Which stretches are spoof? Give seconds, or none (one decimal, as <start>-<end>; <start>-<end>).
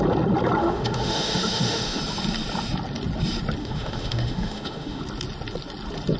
0.6-2.0; 3.6-5.0